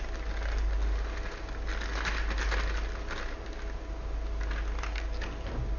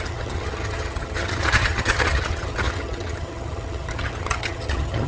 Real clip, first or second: first